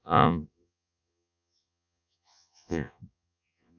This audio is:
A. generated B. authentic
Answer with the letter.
A